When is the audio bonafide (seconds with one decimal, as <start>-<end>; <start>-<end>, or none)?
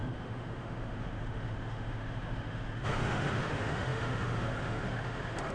none